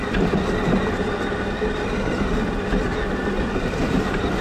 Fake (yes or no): no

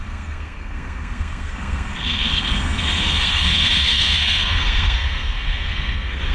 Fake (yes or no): yes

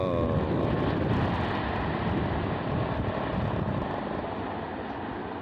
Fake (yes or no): no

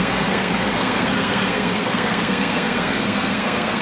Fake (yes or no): yes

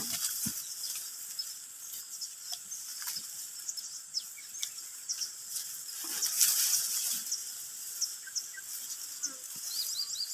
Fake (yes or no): no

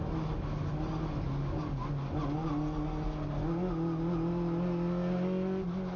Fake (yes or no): no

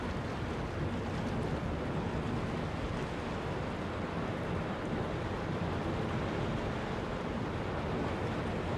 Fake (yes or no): no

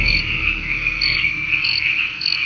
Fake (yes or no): yes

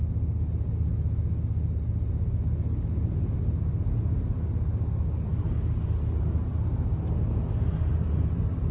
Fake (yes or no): no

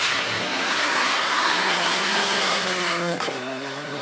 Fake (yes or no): yes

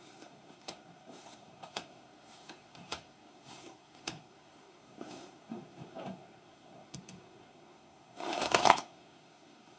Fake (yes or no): yes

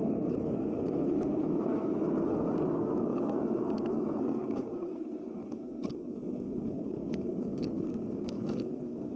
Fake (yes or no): yes